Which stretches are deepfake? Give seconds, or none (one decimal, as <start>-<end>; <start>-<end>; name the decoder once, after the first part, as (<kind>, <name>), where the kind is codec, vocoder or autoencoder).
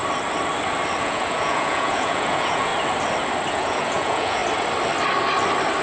1.0-2.7 (vocoder, Vocos); 3.5-4.4